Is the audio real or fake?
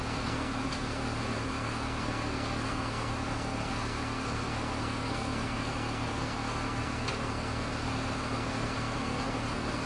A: fake